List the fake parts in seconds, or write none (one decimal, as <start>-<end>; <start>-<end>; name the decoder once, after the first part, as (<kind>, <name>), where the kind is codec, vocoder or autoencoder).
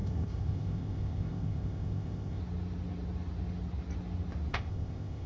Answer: 0.0-2.4 (codec, ZipCodec); 4.5-5.3